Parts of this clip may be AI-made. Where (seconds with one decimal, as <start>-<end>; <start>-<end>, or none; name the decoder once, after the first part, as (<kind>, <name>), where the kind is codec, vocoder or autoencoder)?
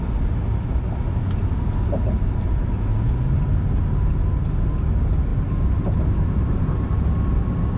5.3-6.6 (vocoder, BigVGAN v2)